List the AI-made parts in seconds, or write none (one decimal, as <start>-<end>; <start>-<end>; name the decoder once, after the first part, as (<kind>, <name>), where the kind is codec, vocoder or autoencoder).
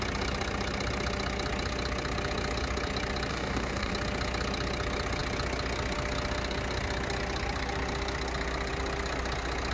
3.3-3.9 (codec, DAC)